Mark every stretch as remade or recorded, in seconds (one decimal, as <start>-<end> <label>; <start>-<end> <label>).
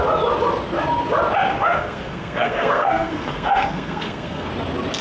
0.0-1.5 recorded; 1.5-4.5 remade; 4.5-5.0 recorded